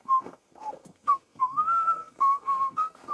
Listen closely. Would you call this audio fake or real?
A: fake